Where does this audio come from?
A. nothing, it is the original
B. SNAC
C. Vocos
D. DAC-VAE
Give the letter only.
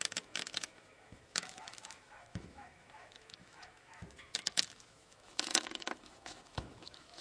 D